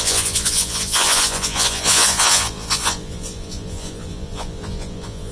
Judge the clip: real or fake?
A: fake